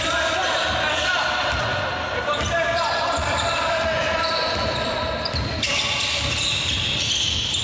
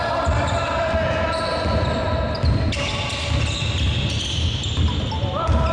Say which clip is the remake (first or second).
first